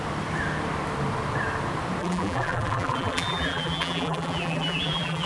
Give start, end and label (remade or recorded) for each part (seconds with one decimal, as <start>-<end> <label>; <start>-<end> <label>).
0.0-2.0 recorded; 2.0-5.3 remade